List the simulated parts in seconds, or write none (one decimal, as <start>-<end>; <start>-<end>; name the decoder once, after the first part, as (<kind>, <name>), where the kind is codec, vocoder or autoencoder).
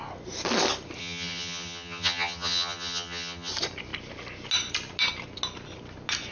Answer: 1.0-3.5 (vocoder, HiFi-GAN)